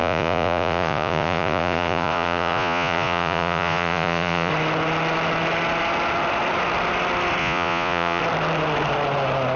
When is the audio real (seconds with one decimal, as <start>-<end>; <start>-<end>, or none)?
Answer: 4.5-7.4; 8.2-9.6